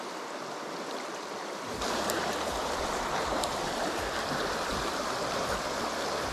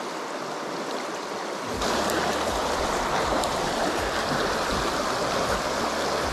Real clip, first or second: second